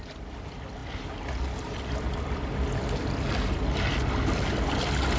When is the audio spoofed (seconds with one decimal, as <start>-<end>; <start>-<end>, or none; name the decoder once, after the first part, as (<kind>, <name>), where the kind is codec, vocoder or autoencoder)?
none